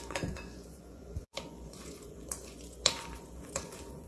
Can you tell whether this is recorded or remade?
remade